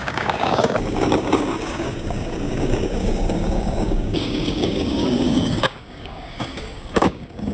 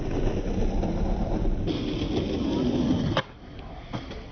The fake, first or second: first